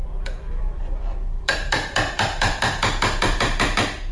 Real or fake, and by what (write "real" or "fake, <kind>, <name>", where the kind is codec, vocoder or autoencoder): fake, vocoder, BigVGAN v2